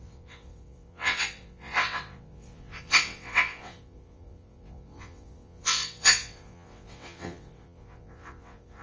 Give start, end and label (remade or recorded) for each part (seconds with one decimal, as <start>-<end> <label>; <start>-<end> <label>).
0.0-8.8 remade